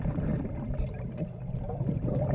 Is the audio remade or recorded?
recorded